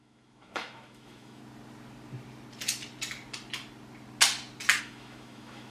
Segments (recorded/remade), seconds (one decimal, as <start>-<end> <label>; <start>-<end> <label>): 0.0-1.4 remade; 1.4-4.8 recorded; 4.8-5.7 remade